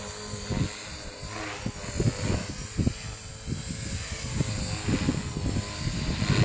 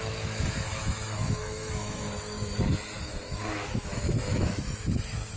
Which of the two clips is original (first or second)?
first